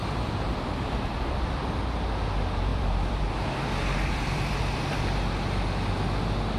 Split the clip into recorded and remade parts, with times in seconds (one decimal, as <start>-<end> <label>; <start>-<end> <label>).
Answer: 0.0-1.8 remade; 1.8-2.7 recorded; 2.7-5.9 remade; 5.9-6.6 recorded